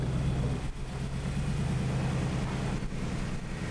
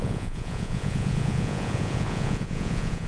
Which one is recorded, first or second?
first